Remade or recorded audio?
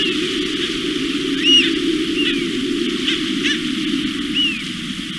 recorded